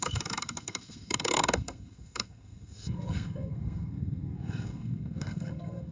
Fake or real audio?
fake